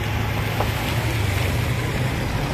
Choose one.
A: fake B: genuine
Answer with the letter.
B